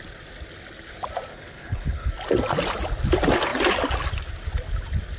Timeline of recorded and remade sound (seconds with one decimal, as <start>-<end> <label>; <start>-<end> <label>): 0.0-1.3 recorded; 1.3-2.1 remade; 2.1-5.2 recorded